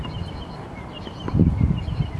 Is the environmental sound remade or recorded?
recorded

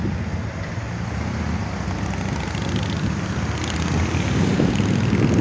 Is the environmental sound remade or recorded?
recorded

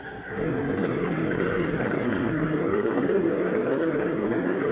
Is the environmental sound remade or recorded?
remade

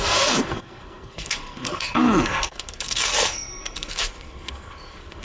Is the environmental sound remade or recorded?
remade